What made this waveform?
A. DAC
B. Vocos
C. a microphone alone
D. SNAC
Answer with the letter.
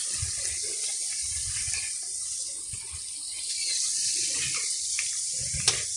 C